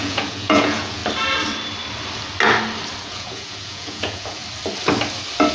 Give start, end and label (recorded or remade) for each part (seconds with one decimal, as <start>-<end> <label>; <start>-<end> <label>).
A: 0.0-1.0 remade; 1.0-3.0 recorded; 3.0-4.4 remade; 4.4-5.5 recorded